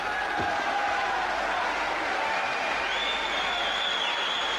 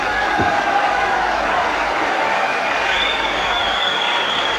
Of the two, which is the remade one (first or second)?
second